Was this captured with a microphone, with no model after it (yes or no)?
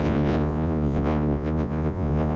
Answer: no